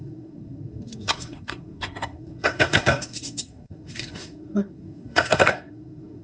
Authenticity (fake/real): fake